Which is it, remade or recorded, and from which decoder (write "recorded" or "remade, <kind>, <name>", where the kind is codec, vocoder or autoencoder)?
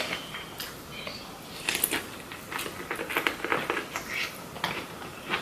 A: recorded